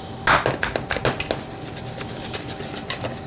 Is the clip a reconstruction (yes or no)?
no